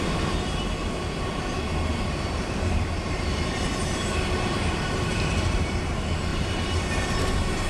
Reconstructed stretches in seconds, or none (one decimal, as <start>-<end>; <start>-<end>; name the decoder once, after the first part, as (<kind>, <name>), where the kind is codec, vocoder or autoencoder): 1.9-5.8 (vocoder, BigVGAN v2); 6.3-7.1